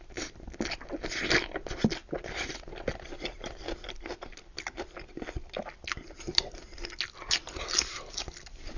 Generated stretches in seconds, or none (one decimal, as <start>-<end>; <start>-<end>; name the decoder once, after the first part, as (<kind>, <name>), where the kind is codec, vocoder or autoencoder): none